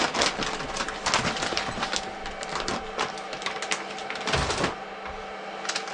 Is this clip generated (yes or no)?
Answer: no